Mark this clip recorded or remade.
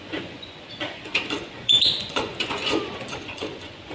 remade